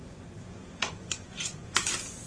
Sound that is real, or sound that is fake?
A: fake